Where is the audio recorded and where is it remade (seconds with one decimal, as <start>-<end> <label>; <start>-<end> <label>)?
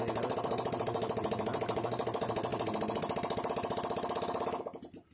0.0-5.1 recorded